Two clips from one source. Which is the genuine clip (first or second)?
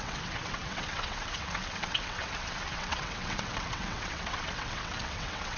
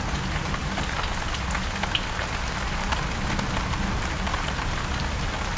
second